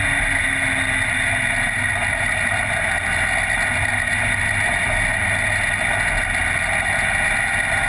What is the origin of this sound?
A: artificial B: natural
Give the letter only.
B